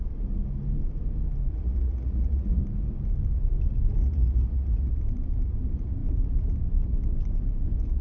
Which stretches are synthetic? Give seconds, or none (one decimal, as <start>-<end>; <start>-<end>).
1.5-2.6; 4.0-4.9